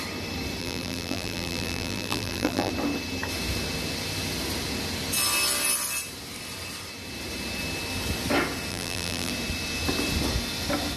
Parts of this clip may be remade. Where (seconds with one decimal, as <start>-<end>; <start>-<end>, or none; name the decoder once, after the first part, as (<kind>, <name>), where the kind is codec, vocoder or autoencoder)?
0.6-2.7 (vocoder, BigVGAN v2); 8.7-9.3